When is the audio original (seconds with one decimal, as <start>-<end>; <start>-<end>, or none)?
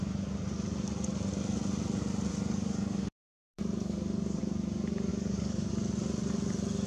0.0-2.3; 4.4-5.1; 5.7-6.9